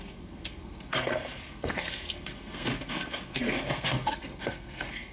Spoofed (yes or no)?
yes